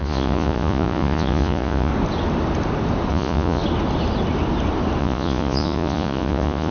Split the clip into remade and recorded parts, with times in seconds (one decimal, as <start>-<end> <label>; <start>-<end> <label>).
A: 0.0-1.9 remade; 1.9-3.1 recorded; 3.1-3.6 remade; 3.6-5.0 recorded; 5.0-6.7 remade